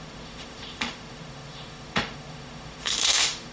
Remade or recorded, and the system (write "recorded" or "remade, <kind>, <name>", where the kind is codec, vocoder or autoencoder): remade, autoencoder, DAC-VAE